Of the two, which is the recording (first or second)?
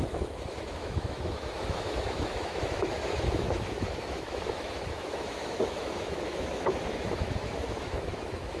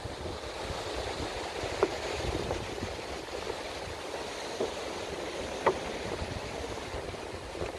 second